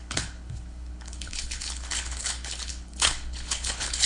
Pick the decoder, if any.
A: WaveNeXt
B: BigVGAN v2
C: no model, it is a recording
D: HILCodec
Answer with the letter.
D